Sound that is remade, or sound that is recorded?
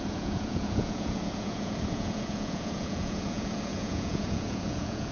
remade